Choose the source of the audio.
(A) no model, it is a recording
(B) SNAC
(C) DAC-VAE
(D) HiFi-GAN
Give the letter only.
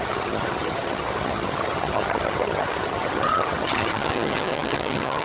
D